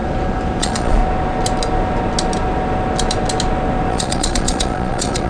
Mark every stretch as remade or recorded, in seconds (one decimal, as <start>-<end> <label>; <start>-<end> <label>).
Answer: 0.0-0.6 recorded; 0.6-1.0 remade; 1.0-3.9 recorded; 3.9-5.3 remade